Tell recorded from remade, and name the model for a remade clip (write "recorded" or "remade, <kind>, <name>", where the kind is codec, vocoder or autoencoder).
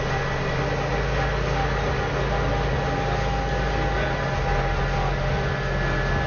recorded